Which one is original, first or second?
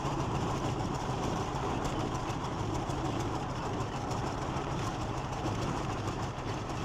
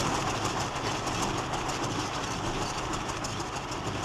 second